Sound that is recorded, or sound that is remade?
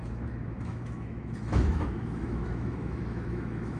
remade